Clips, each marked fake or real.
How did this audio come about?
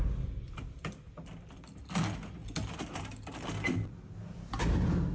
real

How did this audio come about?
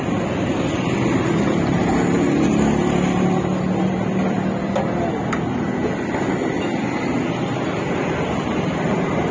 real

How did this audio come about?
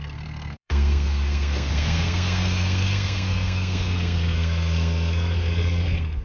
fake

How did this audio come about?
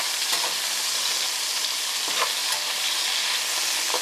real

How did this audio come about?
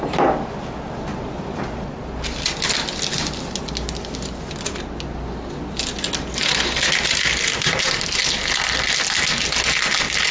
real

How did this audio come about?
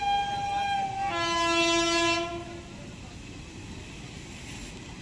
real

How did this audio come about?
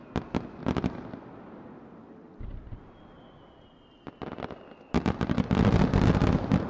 real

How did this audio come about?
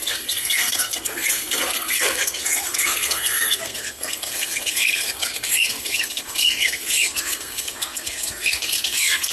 fake